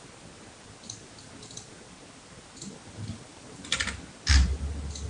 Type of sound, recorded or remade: recorded